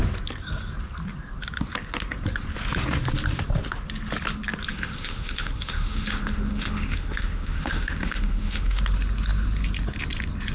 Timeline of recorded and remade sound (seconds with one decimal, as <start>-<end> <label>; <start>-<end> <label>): 0.0-4.7 recorded; 4.7-8.8 remade; 8.8-10.5 recorded